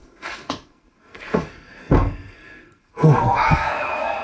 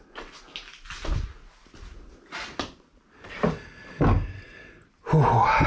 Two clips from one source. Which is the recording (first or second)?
second